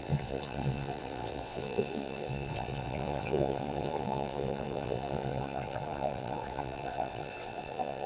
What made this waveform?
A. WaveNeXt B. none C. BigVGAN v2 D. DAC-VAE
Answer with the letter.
A